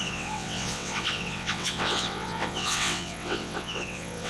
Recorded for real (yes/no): no